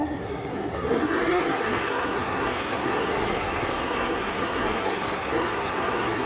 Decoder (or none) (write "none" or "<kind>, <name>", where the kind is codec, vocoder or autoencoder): codec, SNAC